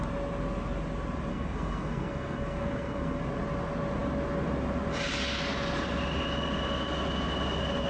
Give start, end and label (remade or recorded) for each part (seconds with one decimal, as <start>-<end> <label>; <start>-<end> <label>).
0.0-1.3 recorded; 1.3-3.2 remade; 3.2-7.9 recorded